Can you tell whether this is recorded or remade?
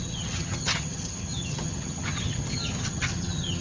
remade